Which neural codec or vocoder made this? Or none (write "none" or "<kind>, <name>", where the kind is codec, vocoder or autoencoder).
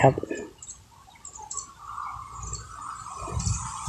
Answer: none